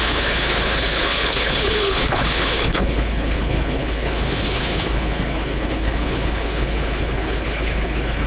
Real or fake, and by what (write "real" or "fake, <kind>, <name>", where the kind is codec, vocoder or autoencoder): fake, codec, HILCodec